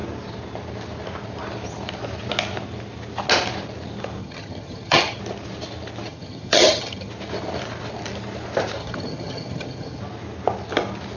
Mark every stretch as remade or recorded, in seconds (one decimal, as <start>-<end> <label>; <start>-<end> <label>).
0.0-4.2 recorded; 4.2-5.2 remade; 5.2-6.1 recorded; 6.1-7.1 remade; 7.1-8.8 recorded; 8.8-10.0 remade; 10.0-11.2 recorded